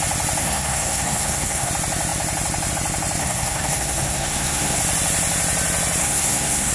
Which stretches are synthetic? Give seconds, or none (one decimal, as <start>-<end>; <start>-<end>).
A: 0.4-1.7; 3.2-4.8; 6.0-6.7